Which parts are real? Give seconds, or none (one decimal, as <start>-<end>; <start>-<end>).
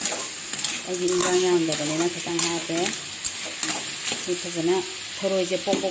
0.0-1.2; 1.8-5.9